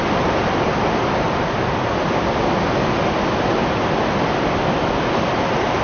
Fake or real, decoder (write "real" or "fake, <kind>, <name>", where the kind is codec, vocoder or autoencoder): real